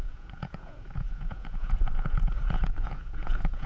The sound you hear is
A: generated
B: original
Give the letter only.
A